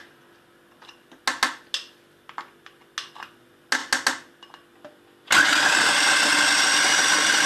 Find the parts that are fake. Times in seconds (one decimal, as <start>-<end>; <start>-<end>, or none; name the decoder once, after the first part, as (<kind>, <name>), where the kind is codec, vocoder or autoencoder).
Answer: none